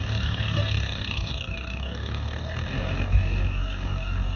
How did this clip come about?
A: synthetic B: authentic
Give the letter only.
A